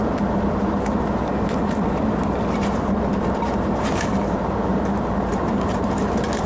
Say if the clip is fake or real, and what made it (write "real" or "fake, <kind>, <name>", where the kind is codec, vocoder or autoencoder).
fake, vocoder, BigVGAN v2